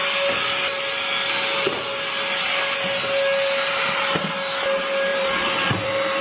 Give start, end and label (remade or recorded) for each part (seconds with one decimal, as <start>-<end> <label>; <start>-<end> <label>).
0.0-5.1 recorded; 5.1-6.2 remade